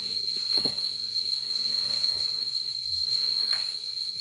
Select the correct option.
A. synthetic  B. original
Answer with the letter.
A